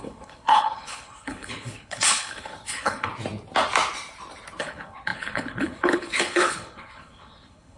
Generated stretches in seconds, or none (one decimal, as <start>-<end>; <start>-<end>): 0.0-3.1; 4.6-7.8